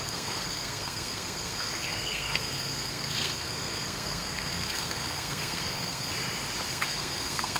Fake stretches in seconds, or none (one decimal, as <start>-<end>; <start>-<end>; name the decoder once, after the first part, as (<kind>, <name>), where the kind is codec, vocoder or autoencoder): 0.0-6.1 (codec, SNAC); 6.7-7.6